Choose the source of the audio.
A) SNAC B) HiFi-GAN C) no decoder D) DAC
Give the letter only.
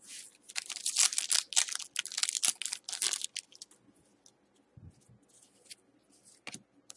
C